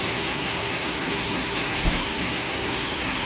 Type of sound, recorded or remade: remade